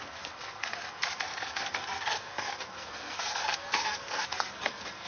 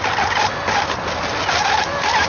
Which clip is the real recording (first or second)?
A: second